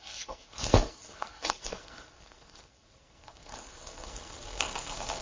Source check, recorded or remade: remade